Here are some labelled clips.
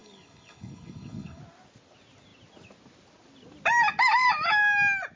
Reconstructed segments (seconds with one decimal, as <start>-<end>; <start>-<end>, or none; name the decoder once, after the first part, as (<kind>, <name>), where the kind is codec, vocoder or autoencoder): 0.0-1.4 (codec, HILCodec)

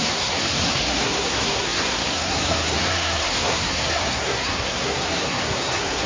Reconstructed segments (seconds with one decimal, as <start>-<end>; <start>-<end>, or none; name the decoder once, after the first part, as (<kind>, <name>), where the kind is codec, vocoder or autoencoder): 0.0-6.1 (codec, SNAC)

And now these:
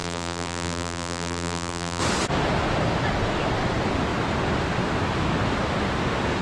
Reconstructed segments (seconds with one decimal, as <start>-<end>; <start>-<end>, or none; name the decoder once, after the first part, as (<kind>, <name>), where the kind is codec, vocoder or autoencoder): 0.0-2.0 (vocoder, BigVGAN v2)

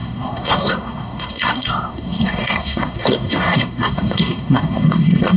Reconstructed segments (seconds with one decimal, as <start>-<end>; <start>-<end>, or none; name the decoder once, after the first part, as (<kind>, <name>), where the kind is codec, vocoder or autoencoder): 0.0-5.4 (codec, SNAC)

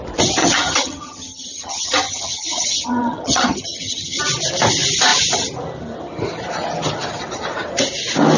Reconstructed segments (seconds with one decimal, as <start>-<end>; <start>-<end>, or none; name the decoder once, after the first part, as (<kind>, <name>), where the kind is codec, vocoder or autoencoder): 0.4-4.2 (vocoder, HiFi-GAN)

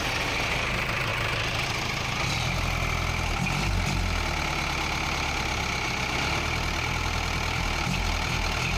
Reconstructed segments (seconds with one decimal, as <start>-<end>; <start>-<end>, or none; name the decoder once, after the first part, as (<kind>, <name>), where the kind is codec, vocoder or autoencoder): none